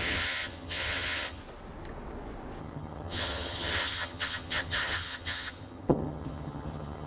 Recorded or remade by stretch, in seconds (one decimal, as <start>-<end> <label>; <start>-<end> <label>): 0.0-1.4 remade; 1.4-2.6 recorded; 2.6-7.1 remade